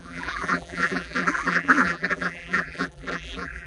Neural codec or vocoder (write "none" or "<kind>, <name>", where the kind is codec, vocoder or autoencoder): vocoder, BigVGAN v2